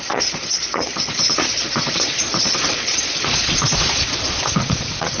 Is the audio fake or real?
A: fake